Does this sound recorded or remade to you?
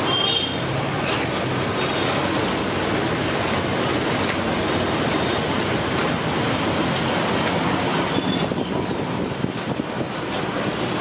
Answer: recorded